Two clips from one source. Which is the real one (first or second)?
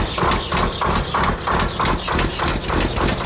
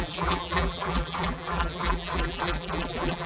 first